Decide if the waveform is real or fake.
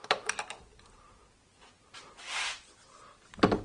real